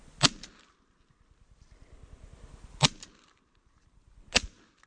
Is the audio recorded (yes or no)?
yes